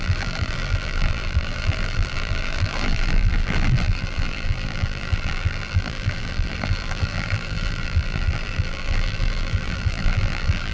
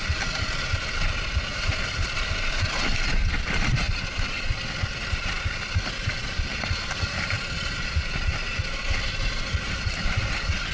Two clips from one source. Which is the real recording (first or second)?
second